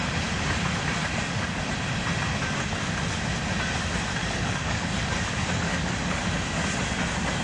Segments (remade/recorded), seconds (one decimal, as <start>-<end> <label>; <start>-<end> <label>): 0.0-1.0 recorded; 1.0-1.6 remade; 1.6-4.2 recorded; 4.2-6.2 remade; 6.2-7.4 recorded